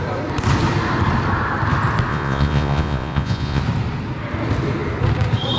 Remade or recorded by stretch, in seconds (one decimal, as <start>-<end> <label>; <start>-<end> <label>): 0.0-2.1 recorded; 2.1-3.6 remade; 3.6-5.6 recorded